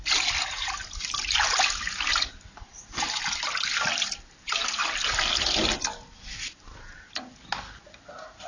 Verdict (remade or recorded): recorded